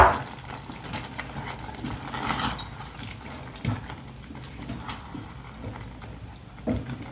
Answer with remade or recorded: recorded